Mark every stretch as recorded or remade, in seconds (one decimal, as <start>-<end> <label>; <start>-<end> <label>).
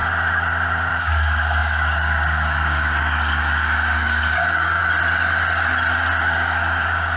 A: 0.0-0.9 recorded; 0.9-4.8 remade; 4.8-6.2 recorded; 6.2-7.2 remade